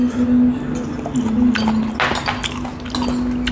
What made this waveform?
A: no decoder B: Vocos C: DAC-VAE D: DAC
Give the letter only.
A